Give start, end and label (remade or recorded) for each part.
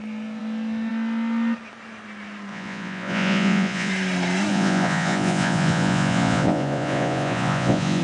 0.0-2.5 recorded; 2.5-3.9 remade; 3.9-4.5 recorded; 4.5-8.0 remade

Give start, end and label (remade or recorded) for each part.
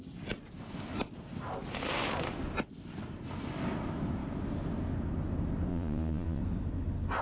0.0-5.7 recorded; 5.7-6.4 remade; 6.4-7.2 recorded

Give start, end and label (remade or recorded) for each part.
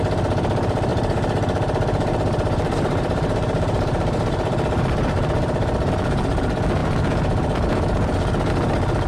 0.0-0.9 recorded; 0.9-5.9 remade; 5.9-9.1 recorded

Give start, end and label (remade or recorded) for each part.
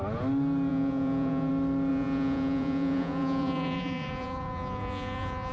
0.0-0.7 recorded; 0.7-1.5 remade; 1.5-1.9 recorded; 1.9-5.5 remade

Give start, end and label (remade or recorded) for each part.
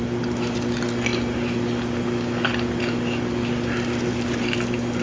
0.0-5.0 recorded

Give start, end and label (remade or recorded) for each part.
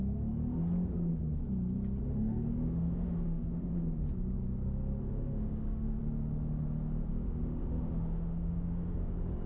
0.0-2.0 recorded; 2.0-3.7 remade; 3.7-5.0 recorded; 5.0-6.0 remade; 6.0-7.1 recorded; 7.1-9.1 remade; 9.1-9.5 recorded